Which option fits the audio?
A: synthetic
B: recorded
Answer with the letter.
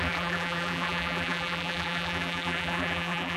A